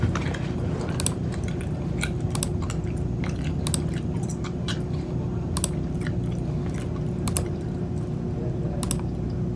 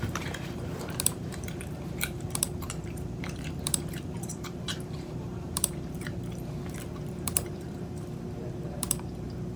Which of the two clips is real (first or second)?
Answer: first